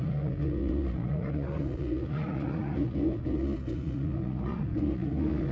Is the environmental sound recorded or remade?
remade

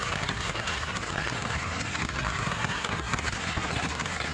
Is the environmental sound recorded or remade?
remade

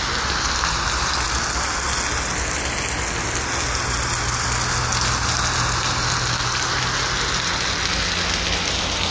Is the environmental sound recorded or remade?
recorded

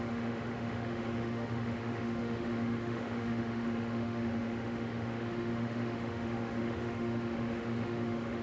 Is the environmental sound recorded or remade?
remade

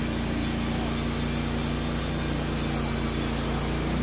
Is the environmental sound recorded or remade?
recorded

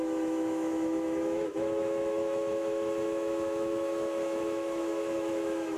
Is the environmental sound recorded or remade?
remade